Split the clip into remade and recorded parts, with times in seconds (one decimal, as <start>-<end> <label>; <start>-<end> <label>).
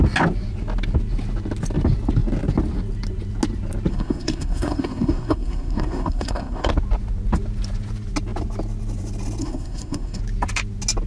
0.0-3.9 recorded; 3.9-6.7 remade; 6.7-9.4 recorded; 9.4-10.2 remade; 10.2-11.1 recorded